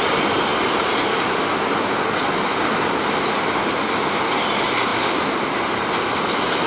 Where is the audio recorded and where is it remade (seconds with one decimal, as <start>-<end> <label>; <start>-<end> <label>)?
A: 0.0-6.7 recorded